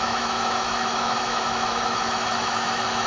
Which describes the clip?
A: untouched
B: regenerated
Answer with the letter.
B